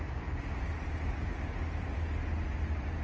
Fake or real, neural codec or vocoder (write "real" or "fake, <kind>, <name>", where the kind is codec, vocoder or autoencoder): real